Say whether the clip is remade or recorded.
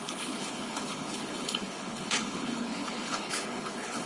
remade